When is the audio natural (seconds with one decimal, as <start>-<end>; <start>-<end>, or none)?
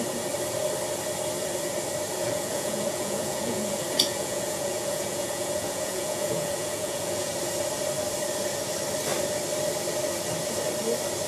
0.0-2.2; 7.3-11.3